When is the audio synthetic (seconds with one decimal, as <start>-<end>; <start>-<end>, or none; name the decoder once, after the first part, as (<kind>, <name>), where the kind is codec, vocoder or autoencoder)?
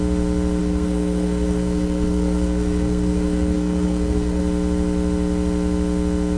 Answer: 0.6-4.4 (codec, SNAC)